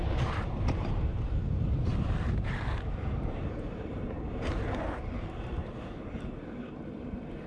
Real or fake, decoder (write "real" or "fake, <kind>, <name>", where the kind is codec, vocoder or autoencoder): fake, vocoder, BigVGAN v2